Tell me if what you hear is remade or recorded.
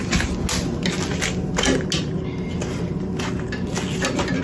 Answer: recorded